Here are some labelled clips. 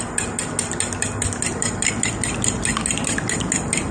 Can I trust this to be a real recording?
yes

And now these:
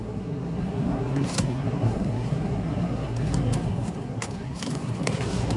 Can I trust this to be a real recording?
no